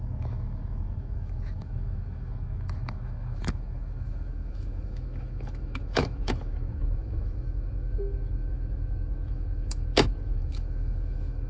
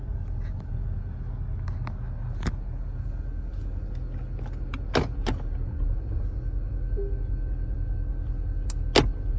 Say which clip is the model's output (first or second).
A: first